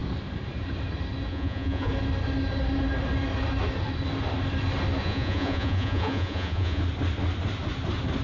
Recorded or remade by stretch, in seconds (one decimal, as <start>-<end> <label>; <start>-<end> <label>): 0.0-1.3 recorded; 1.3-1.9 remade; 1.9-5.0 recorded; 5.0-6.8 remade; 6.8-8.2 recorded